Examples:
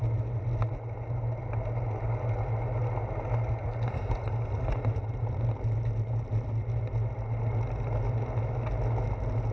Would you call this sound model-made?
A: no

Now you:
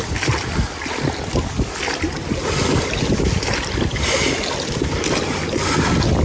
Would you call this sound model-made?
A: no